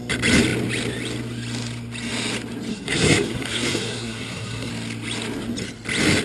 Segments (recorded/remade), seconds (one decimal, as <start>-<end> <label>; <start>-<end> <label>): 0.0-2.7 recorded; 2.7-4.7 remade; 4.7-6.2 recorded